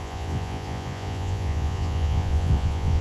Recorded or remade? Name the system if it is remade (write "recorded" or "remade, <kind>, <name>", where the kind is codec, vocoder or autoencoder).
remade, vocoder, Vocos